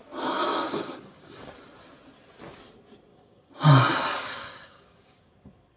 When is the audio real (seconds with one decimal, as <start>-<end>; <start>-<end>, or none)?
0.0-0.5; 1.5-3.1; 5.3-5.8

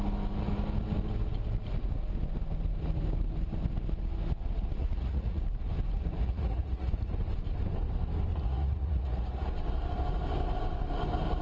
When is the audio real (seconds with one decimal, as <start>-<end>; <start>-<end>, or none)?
0.0-4.8; 5.4-6.2; 7.1-8.3; 9.5-11.4